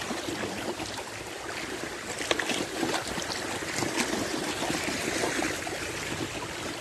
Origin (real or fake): real